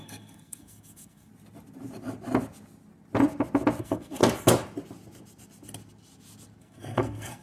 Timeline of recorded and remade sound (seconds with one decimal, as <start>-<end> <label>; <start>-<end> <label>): 0.0-1.3 remade; 1.3-3.8 recorded; 3.8-4.2 remade; 4.2-6.6 recorded; 6.6-7.4 remade